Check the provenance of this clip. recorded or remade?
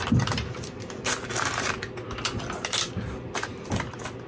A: recorded